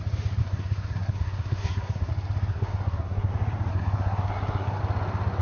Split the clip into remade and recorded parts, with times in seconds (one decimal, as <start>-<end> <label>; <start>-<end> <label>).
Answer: 0.0-0.4 recorded; 0.4-2.1 remade; 2.1-2.5 recorded; 2.5-3.3 remade; 3.3-3.7 recorded; 3.7-4.8 remade; 4.8-5.4 recorded